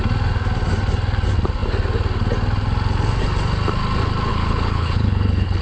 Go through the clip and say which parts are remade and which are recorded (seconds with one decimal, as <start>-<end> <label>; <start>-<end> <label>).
0.0-4.3 recorded; 4.3-5.6 remade